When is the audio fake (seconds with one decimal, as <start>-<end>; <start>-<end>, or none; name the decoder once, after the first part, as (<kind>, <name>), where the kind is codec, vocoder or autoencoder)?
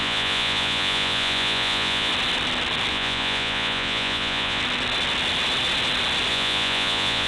0.0-2.1 (vocoder, Vocos); 2.9-4.6; 6.3-7.3